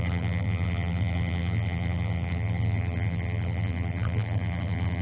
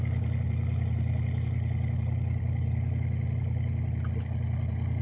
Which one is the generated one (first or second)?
first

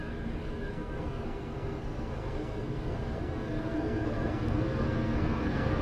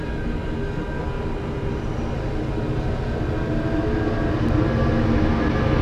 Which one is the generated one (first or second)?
first